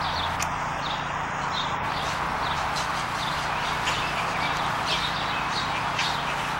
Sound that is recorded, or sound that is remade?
recorded